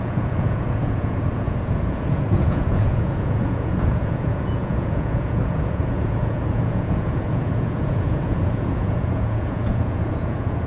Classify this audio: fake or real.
fake